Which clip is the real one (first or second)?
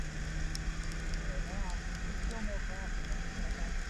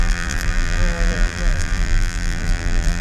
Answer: first